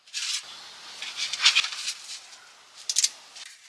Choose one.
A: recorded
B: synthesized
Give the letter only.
A